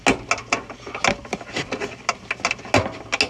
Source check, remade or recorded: recorded